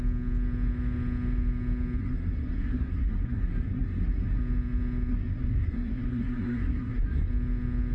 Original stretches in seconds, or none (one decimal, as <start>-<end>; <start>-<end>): 0.0-2.0; 4.4-5.1; 7.3-7.9